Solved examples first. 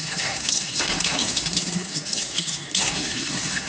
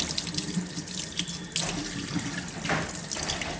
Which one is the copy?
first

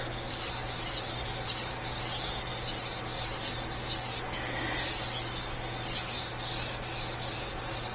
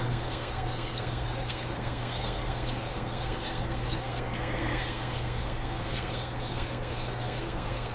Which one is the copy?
second